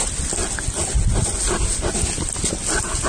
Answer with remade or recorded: recorded